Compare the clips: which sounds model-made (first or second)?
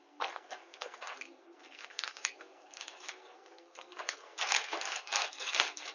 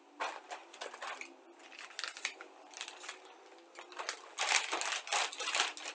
first